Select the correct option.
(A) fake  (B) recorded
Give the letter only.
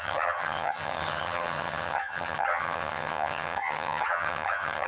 A